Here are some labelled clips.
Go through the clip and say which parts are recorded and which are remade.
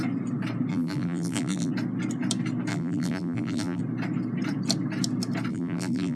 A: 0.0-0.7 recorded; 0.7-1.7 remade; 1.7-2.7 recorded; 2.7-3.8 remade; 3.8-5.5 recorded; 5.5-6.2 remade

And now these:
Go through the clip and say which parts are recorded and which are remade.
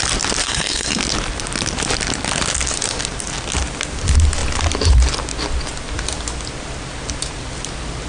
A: 0.0-0.4 recorded; 0.4-1.0 remade; 1.0-8.1 recorded